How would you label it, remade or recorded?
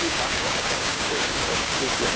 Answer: remade